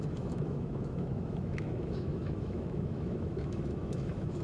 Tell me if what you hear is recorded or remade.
remade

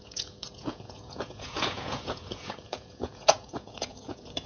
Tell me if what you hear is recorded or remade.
remade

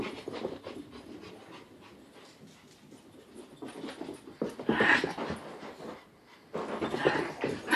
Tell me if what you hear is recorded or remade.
recorded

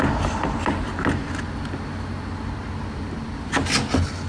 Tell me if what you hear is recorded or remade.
recorded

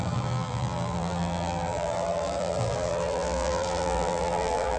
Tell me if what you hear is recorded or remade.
remade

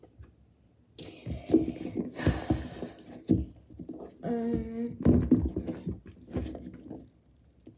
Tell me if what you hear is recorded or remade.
recorded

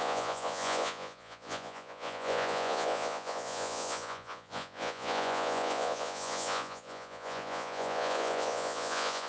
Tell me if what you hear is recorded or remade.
remade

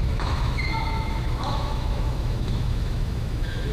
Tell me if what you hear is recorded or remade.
remade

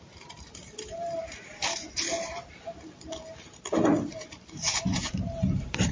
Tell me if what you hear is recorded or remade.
remade